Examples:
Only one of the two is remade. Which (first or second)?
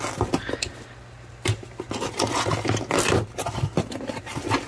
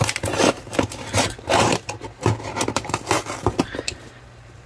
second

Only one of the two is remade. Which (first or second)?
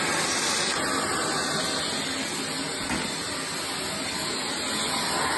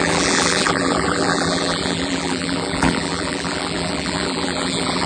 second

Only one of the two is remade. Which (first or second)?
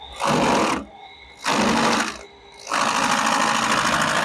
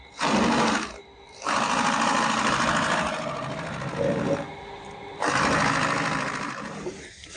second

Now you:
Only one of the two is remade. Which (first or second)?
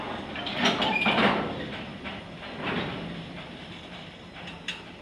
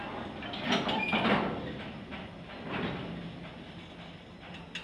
first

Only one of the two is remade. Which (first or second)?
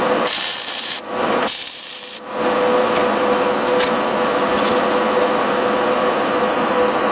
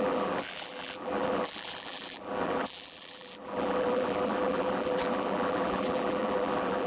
second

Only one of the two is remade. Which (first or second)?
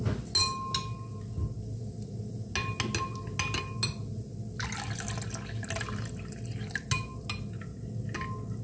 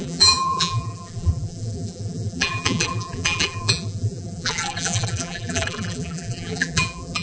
second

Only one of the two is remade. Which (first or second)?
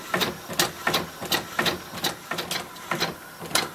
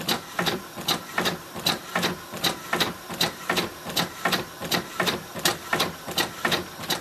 second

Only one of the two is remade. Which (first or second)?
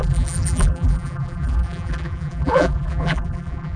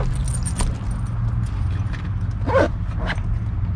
first